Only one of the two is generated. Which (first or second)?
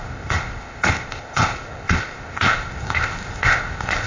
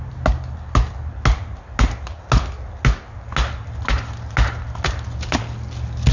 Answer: first